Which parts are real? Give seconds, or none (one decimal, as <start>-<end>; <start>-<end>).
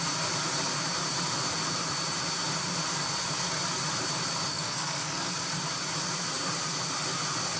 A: 0.0-4.5; 5.3-7.6